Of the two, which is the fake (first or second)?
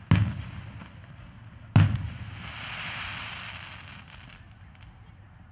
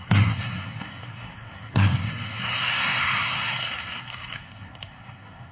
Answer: second